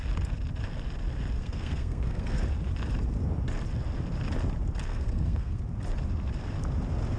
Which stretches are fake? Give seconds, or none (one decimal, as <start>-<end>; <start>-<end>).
1.4-2.4; 4.9-5.6

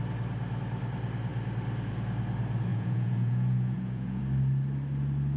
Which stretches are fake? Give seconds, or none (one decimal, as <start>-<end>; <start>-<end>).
2.7-4.2

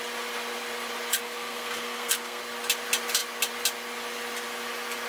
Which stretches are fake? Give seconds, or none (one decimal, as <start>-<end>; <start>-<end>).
1.2-2.4

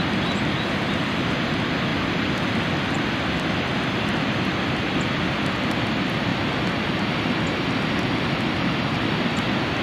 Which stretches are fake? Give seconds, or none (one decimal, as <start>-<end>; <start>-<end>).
none

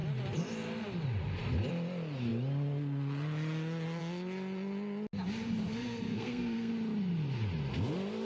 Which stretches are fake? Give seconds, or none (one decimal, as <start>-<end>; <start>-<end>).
5.7-6.7

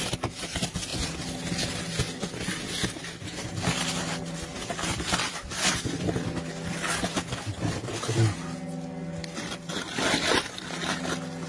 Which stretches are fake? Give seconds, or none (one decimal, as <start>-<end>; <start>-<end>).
none

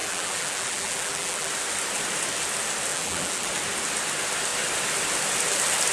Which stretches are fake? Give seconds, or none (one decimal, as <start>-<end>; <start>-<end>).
0.0-1.5; 2.9-3.5

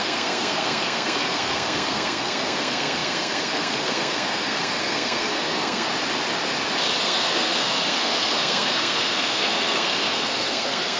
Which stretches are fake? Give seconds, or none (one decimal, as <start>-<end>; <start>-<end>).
0.0-5.9; 7.0-11.0